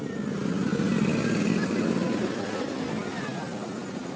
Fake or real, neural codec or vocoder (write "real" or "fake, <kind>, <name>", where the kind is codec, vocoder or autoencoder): real